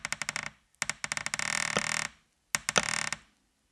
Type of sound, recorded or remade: recorded